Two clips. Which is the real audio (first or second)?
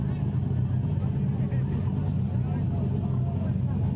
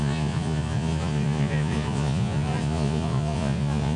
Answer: first